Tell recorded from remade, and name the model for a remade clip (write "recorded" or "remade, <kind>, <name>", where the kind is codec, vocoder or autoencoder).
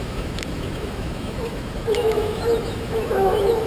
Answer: remade, autoencoder, DAC-VAE